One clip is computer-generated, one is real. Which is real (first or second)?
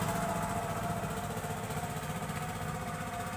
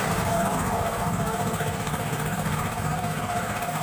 first